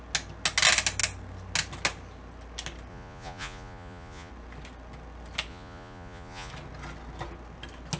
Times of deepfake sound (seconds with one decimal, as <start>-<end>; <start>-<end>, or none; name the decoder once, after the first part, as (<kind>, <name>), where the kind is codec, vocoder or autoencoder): 2.9-4.3 (vocoder, Vocos); 5.5-6.5